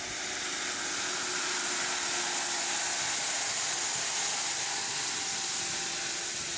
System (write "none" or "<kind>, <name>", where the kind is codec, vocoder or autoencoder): none